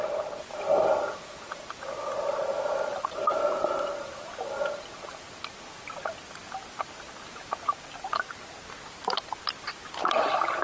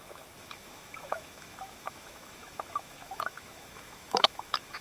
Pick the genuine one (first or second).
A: first